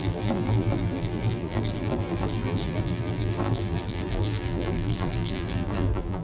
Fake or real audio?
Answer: fake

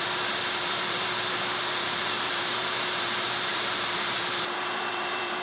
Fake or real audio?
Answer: fake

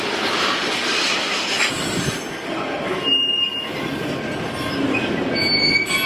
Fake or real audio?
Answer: real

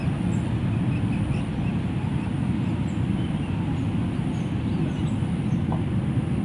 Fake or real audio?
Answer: real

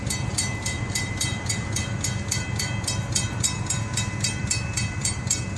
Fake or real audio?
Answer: fake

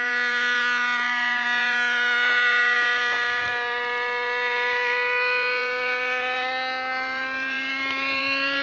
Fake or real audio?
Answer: fake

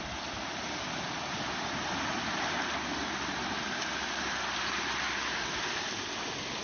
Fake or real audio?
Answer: fake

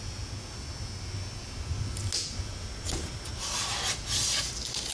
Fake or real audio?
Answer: real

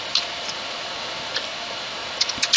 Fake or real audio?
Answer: real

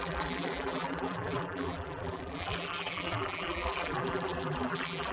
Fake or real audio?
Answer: fake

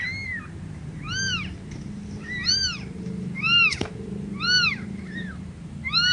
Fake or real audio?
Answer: fake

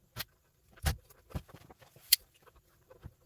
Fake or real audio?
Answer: fake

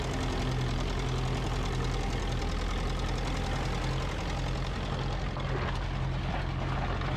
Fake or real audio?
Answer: real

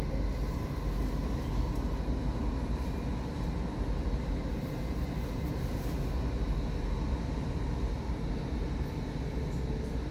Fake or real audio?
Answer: real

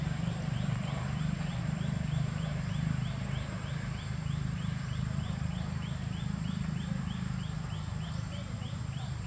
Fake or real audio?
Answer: fake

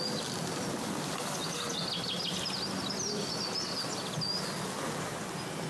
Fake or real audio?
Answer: real